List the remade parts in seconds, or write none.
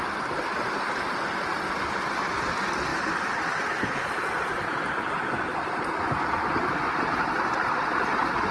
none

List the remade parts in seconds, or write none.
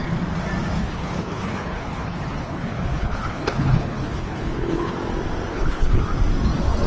0.8-4.9; 5.5-6.0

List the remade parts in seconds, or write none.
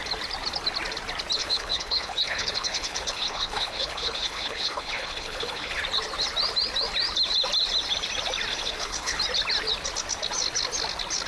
1.4-5.8; 8.5-9.2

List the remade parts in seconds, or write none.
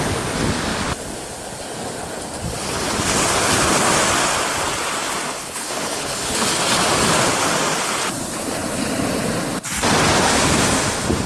5.4-6.3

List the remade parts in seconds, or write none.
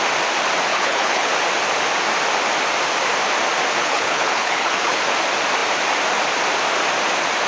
0.7-1.3; 3.8-5.0